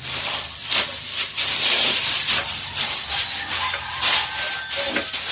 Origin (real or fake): real